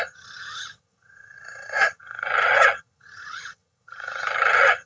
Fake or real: fake